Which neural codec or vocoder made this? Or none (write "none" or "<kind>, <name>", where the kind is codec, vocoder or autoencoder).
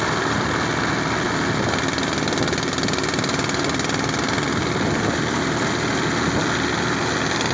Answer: none